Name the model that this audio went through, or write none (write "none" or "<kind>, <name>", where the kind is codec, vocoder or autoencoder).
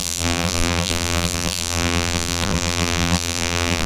vocoder, BigVGAN v2